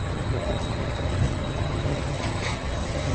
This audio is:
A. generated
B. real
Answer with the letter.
A